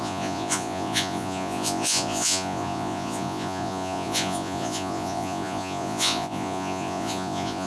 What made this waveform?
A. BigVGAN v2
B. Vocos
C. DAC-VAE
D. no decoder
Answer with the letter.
B